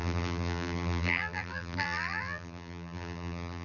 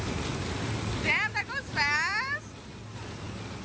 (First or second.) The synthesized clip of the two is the first